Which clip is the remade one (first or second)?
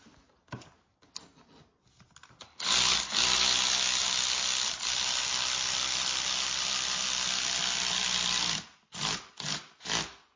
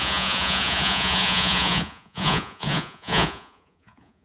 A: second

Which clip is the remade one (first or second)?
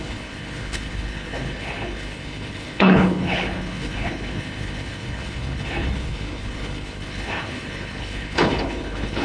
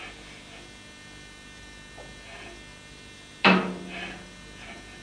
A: first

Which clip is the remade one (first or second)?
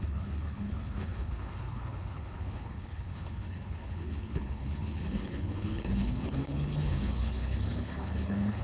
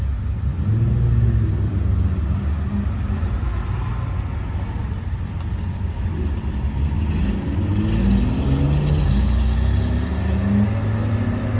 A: first